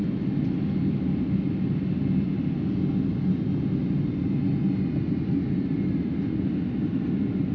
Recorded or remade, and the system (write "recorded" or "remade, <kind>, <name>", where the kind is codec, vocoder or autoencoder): recorded